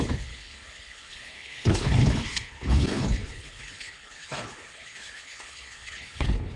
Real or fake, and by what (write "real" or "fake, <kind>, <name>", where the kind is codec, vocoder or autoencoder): fake, codec, HILCodec